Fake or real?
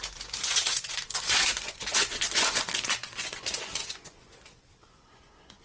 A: fake